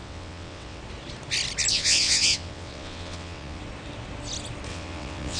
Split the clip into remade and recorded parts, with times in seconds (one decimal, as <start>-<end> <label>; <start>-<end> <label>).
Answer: 0.0-0.8 remade; 0.8-1.7 recorded; 1.7-3.6 remade; 3.6-4.7 recorded; 4.7-5.4 remade